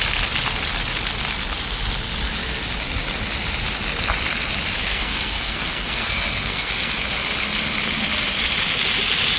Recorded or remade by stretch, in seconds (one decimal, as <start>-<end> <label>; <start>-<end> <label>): 0.0-4.8 recorded; 4.8-7.0 remade; 7.0-9.4 recorded